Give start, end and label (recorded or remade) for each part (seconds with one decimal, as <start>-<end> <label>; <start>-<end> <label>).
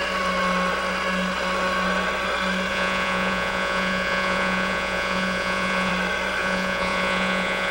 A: 0.0-2.7 recorded; 2.7-5.9 remade; 5.9-6.4 recorded; 6.4-7.7 remade